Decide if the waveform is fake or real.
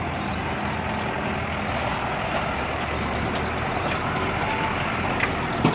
real